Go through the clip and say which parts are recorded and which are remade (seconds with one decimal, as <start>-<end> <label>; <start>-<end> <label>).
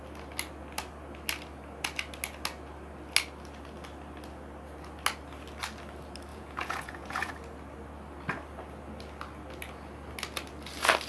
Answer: 0.0-6.3 recorded; 6.3-7.3 remade; 7.3-11.1 recorded